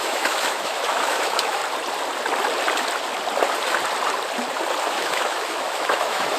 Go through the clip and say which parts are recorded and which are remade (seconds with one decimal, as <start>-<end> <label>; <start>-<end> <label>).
0.0-1.6 remade; 1.6-4.8 recorded; 4.8-6.4 remade